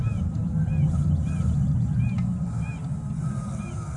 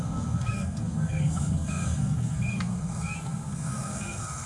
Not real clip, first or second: second